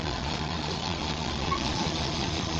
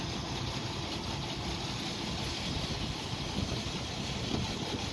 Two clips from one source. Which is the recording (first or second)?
second